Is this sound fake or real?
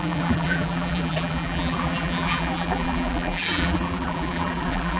fake